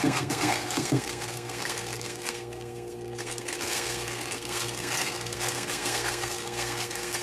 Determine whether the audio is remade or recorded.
remade